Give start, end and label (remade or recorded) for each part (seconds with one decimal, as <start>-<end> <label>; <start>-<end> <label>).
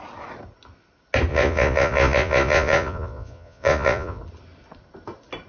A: 0.0-1.3 recorded; 1.3-4.2 remade; 4.2-5.5 recorded